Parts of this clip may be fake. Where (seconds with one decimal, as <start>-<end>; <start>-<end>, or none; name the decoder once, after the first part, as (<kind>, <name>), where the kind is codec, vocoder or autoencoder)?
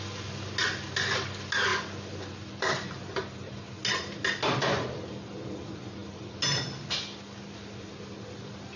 none